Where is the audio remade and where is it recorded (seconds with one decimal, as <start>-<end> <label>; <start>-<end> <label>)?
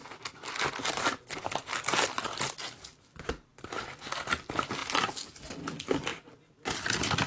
0.0-7.3 recorded